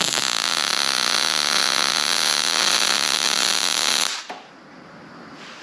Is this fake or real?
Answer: real